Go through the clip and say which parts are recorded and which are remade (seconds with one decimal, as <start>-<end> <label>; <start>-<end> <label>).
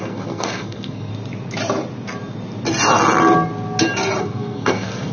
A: 0.0-1.1 remade; 1.1-4.2 recorded; 4.2-5.1 remade